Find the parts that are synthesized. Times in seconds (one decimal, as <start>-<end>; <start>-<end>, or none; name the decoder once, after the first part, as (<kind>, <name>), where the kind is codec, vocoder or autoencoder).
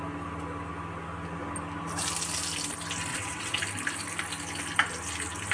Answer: 3.1-3.6 (vocoder, WaveNeXt)